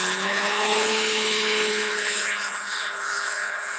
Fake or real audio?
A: fake